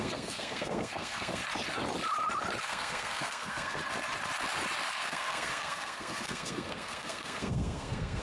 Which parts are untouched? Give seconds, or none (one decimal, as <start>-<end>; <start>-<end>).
1.4-2.6; 3.8-4.9